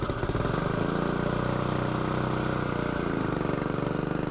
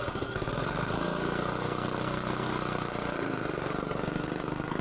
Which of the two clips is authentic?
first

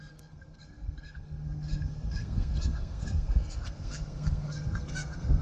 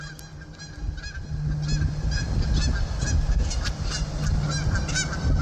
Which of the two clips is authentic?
second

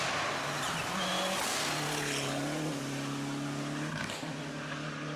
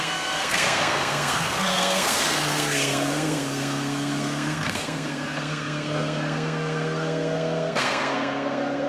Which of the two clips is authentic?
first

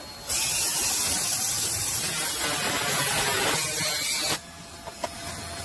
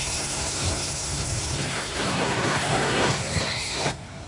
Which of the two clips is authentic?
first